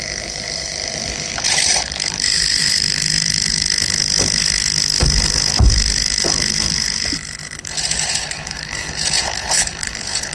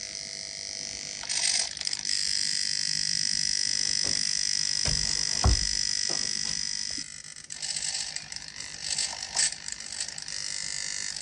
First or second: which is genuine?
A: second